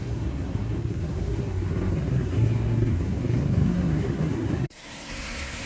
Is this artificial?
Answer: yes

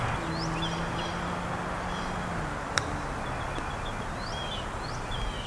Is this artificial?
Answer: no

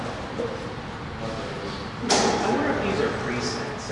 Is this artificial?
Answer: no